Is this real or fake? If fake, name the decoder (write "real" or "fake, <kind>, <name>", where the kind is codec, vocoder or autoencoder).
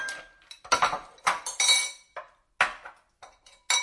real